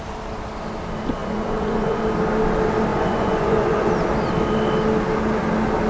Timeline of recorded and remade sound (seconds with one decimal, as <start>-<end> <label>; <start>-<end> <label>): 0.0-1.2 recorded; 1.2-2.0 remade; 2.0-2.9 recorded; 2.9-3.9 remade; 3.9-5.9 recorded